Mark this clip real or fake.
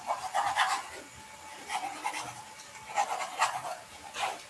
real